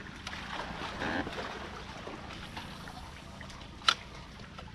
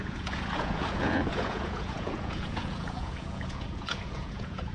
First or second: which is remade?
second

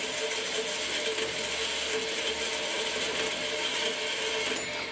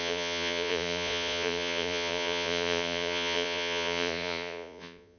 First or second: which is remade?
second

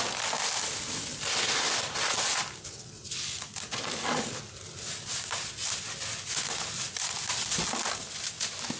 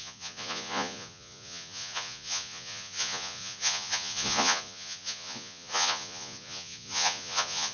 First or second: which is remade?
second